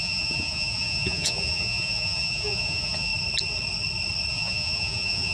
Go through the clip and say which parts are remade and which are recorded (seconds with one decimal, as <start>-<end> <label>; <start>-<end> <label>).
0.0-3.1 remade; 3.1-4.3 recorded; 4.3-5.3 remade